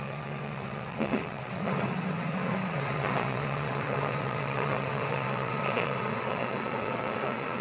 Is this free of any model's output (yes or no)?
no